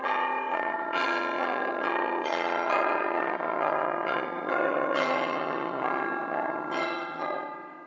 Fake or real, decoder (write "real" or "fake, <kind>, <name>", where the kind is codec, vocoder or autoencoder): fake, vocoder, HiFi-GAN